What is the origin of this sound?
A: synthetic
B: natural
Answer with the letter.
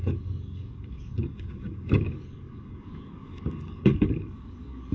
A